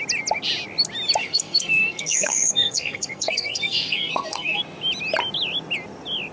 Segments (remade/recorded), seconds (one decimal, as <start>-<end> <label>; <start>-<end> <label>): 0.0-1.2 recorded; 1.2-4.6 remade; 4.6-6.3 recorded